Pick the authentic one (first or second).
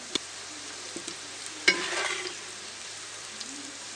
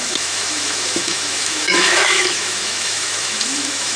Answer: first